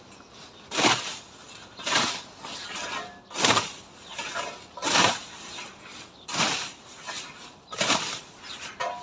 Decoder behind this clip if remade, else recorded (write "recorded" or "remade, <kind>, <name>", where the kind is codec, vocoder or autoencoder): recorded